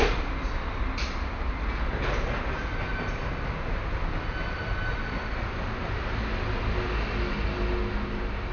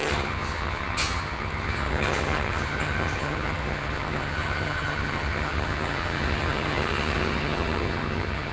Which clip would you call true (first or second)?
first